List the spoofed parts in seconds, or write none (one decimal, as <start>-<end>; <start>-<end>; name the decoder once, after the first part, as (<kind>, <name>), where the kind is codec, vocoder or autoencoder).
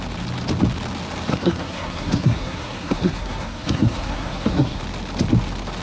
1.3-4.8 (codec, SNAC)